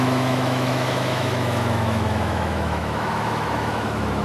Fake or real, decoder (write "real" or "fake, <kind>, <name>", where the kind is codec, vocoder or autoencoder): fake, autoencoder, DAC-VAE